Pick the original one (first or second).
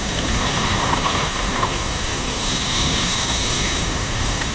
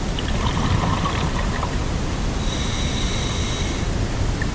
second